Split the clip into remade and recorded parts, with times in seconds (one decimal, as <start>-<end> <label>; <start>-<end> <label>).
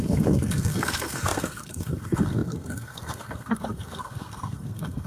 0.0-5.1 remade